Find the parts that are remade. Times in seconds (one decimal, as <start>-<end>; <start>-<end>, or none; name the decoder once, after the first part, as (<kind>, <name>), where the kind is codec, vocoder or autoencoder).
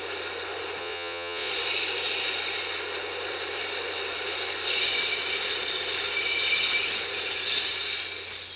0.8-1.5 (vocoder, Vocos)